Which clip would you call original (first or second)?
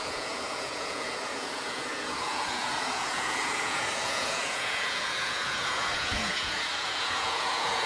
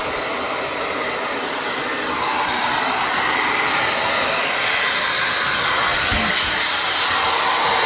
second